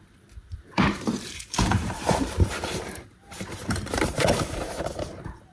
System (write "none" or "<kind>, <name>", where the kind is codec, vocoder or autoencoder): vocoder, BigVGAN v2